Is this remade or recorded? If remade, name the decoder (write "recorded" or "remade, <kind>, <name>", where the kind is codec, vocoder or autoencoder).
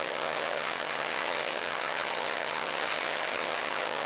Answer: remade, vocoder, HiFi-GAN